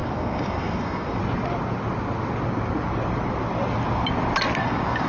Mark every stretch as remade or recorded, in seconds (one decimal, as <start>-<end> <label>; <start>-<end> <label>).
0.0-1.2 remade; 1.2-4.6 recorded; 4.6-5.1 remade